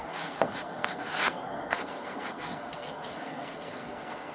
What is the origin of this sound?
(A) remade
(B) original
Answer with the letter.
A